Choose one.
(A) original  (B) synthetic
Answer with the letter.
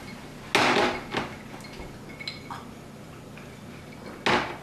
A